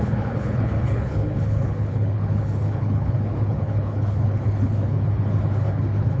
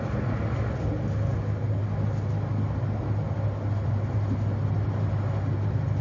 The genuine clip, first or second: second